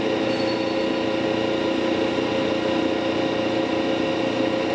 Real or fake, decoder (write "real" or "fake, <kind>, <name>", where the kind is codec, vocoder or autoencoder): real